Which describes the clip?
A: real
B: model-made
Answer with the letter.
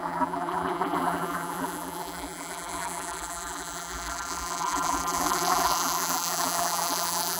B